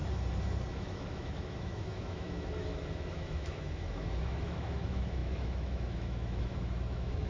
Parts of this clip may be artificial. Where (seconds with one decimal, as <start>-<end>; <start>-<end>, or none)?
0.7-7.3